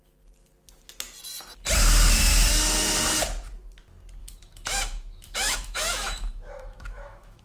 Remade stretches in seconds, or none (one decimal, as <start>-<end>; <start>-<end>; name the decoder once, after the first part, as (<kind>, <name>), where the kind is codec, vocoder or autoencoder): 4.2-7.4 (autoencoder, DAC-VAE)